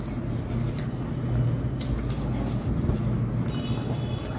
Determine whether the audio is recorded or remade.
recorded